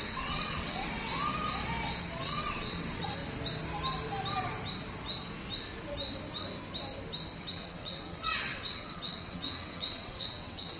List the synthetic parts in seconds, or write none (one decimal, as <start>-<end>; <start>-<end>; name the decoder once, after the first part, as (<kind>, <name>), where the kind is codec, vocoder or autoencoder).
0.0-1.1 (vocoder, WaveNeXt); 2.0-3.2; 7.4-10.8